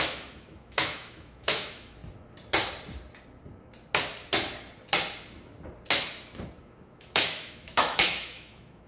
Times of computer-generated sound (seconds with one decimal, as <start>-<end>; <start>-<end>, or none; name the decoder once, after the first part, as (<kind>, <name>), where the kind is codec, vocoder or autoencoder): 0.0-2.0 (autoencoder, DAC-VAE); 6.6-8.9